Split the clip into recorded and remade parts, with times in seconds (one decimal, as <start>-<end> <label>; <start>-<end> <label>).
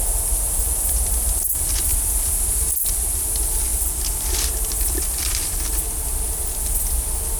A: 0.0-7.4 recorded